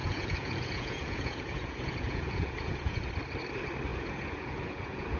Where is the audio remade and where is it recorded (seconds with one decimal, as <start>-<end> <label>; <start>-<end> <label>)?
0.0-3.1 remade; 3.1-3.9 recorded; 3.9-5.2 remade